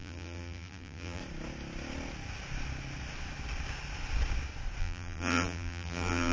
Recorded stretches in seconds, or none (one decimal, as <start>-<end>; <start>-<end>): 1.2-4.8